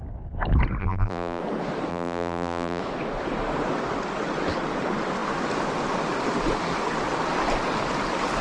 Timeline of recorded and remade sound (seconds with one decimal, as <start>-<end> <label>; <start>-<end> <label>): 0.0-0.8 recorded; 0.8-1.4 remade; 1.4-1.9 recorded; 1.9-2.8 remade; 2.8-8.4 recorded